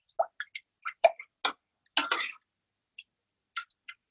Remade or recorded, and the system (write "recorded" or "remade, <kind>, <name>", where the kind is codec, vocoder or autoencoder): recorded